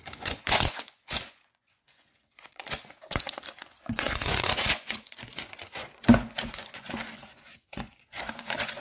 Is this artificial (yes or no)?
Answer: yes